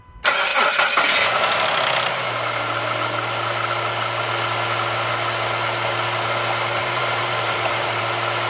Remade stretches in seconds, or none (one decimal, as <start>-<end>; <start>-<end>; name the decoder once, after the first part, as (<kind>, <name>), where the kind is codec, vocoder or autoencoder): 6.8-8.0 (vocoder, BigVGAN v2)